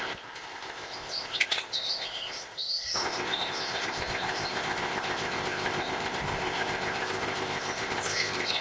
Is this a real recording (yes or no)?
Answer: no